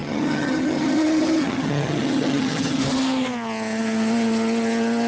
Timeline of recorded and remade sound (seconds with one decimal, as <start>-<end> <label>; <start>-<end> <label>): 0.0-2.8 remade; 2.8-5.1 recorded

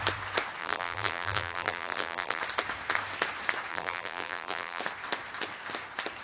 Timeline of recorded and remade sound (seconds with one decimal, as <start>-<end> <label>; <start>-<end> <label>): 0.0-0.6 recorded; 0.6-2.4 remade; 2.4-3.7 recorded; 3.7-4.8 remade; 4.8-6.2 recorded

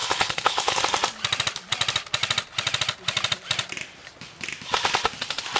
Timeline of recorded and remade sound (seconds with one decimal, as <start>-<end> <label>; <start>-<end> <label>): 0.0-0.8 remade; 0.8-5.6 recorded

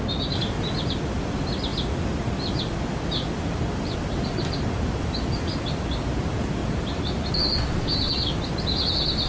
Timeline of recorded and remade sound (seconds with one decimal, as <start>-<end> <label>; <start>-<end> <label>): 0.0-6.6 recorded; 6.6-7.3 remade; 7.3-9.3 recorded